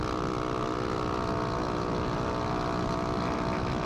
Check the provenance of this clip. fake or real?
real